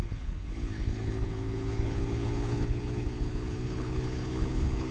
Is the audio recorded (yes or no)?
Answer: no